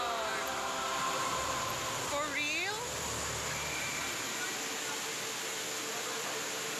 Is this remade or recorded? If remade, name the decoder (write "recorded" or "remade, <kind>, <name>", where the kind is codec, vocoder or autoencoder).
recorded